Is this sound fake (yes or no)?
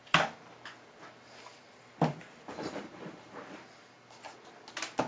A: no